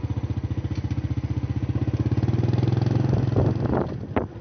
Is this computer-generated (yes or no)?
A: no